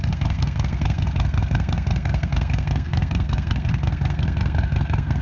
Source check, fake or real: fake